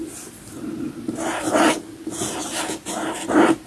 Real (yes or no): yes